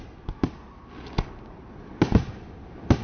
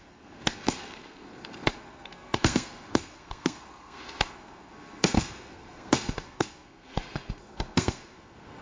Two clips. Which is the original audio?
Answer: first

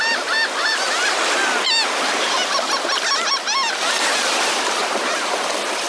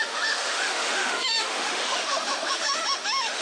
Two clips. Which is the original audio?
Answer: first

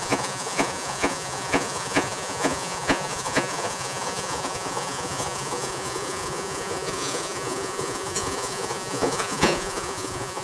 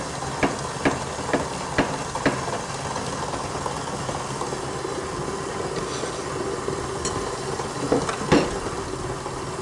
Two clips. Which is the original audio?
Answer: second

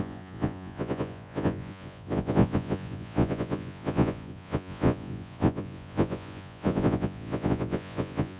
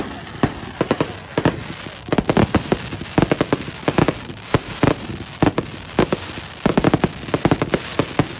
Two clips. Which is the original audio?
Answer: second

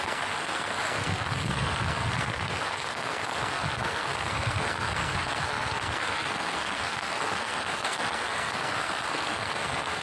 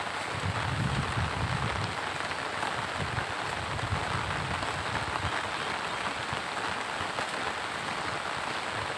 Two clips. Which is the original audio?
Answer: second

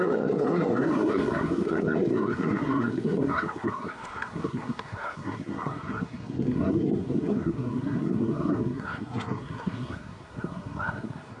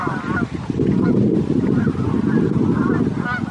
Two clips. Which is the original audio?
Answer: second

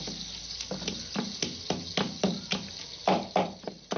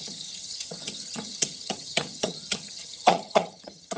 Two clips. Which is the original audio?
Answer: first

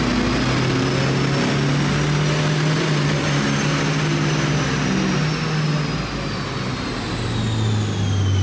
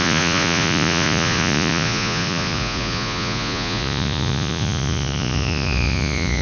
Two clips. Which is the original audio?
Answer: first